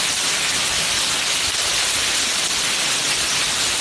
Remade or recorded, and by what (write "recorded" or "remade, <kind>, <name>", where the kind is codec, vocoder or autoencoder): recorded